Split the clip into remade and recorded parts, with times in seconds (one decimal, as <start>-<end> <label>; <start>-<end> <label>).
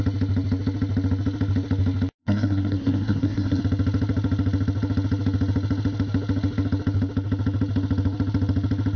0.0-2.2 recorded; 2.2-3.6 remade; 3.6-9.0 recorded